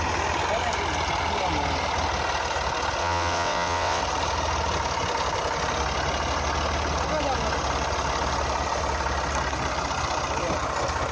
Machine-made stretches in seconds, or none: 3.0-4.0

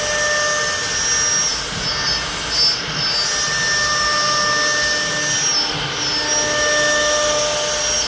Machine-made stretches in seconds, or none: none